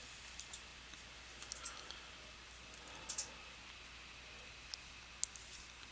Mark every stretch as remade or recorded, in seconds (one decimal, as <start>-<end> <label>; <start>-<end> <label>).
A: 0.0-5.9 recorded